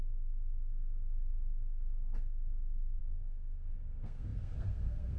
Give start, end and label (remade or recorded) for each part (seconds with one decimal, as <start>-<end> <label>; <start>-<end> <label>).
0.0-5.2 remade